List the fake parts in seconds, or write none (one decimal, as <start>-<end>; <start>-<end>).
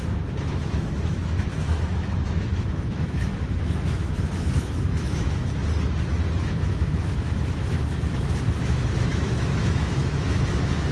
0.0-5.6; 6.4-10.9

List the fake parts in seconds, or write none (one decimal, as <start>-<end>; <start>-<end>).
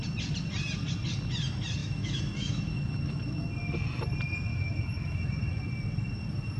1.8-3.5; 4.5-5.6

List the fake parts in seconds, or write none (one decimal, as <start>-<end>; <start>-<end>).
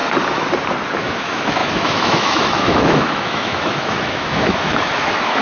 1.0-5.4